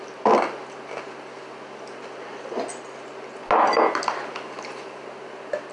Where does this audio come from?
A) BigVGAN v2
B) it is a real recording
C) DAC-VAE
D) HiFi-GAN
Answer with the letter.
B